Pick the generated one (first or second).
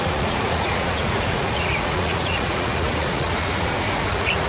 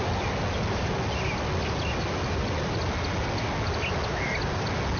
first